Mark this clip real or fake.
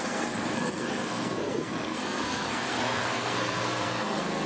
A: fake